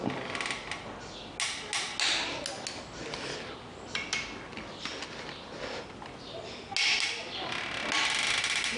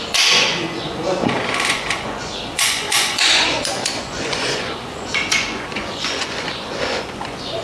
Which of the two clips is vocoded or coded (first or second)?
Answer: second